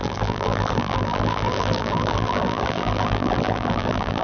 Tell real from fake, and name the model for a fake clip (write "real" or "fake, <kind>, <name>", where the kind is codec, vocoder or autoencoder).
fake, vocoder, BigVGAN v2